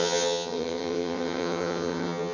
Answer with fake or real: fake